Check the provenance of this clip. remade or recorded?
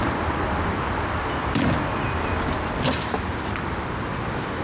recorded